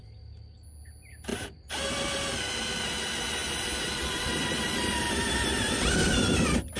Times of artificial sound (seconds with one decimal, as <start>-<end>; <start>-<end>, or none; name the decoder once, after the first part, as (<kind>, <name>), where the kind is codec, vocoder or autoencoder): none